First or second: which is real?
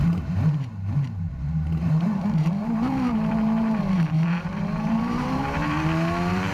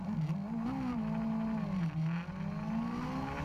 second